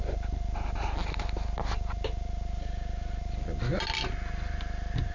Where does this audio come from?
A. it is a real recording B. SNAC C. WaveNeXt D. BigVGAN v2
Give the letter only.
A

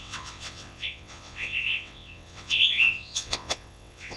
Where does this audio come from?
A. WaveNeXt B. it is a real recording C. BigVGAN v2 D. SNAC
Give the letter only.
A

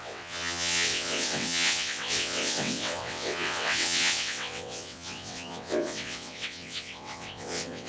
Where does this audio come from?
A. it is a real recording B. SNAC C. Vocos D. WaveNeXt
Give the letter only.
D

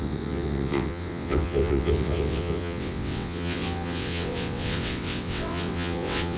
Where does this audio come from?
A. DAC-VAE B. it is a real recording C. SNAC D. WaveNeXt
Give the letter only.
D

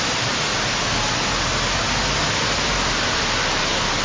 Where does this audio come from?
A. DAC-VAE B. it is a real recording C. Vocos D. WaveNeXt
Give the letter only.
B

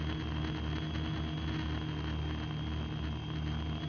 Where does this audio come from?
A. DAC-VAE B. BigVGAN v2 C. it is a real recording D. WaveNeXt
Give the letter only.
C